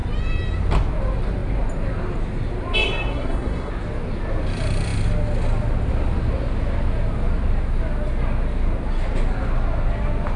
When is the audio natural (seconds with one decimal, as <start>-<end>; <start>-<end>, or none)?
0.0-3.1; 3.7-10.4